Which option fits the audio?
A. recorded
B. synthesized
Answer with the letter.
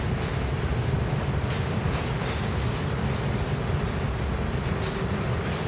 A